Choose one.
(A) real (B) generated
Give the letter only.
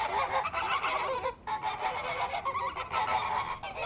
A